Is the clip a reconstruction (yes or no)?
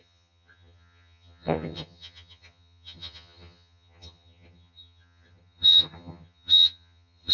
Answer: yes